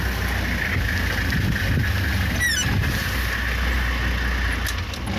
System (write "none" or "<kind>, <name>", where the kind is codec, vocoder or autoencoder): none